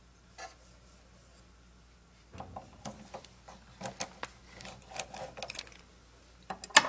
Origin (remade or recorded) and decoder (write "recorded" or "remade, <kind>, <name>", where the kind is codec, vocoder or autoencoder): recorded